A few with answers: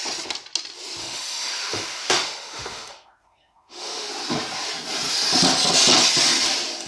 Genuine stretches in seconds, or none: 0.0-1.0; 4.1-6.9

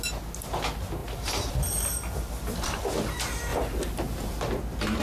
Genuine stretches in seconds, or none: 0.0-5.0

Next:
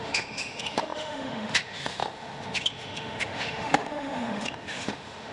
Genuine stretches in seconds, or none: none

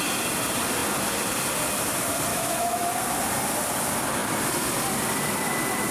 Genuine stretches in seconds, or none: 0.0-2.3; 2.9-5.9

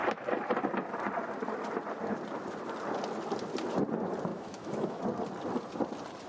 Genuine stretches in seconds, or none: 0.0-4.3; 5.0-6.3

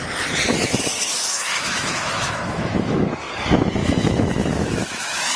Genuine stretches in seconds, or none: 0.0-0.5; 3.3-3.8

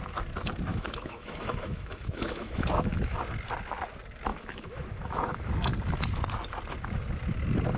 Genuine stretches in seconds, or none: 0.0-0.7; 3.2-4.3; 5.5-7.8

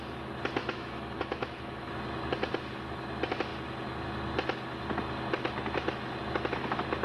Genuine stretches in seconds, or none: 0.0-0.6; 1.9-7.0